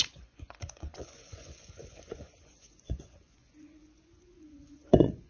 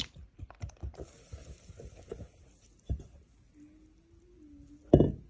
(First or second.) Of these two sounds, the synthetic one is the first